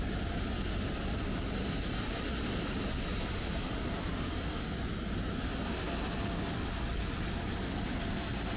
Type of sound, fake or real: real